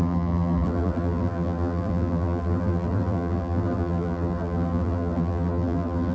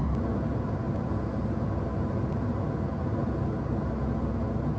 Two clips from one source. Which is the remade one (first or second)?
first